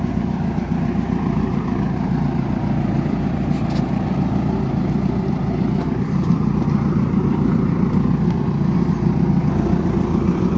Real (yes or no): no